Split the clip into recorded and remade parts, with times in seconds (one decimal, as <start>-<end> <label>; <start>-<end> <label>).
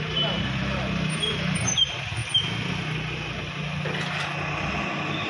0.0-2.2 remade; 2.2-5.3 recorded